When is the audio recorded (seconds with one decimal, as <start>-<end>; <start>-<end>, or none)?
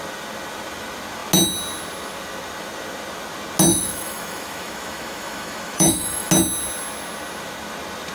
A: 0.0-3.7; 6.3-8.1